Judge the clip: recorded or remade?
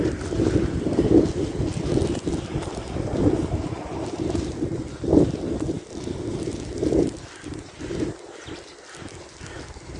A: recorded